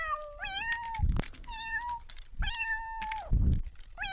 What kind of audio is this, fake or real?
real